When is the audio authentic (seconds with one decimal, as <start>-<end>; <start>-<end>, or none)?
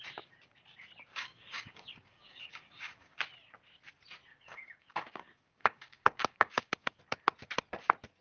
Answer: 0.0-1.1; 3.2-4.3; 7.0-8.2